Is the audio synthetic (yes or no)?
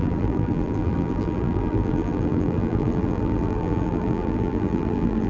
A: yes